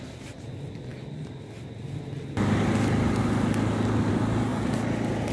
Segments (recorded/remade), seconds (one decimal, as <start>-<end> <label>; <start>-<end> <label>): 0.0-5.3 recorded